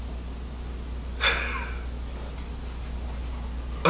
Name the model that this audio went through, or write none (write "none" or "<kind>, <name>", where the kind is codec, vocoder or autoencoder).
none